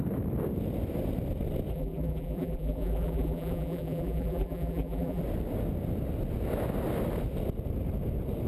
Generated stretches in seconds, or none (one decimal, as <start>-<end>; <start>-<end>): 1.7-5.2